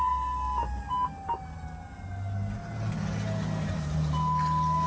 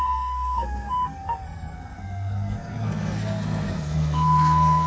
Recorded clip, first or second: first